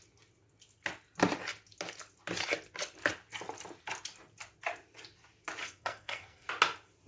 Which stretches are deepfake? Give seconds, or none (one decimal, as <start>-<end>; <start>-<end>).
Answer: 5.6-6.5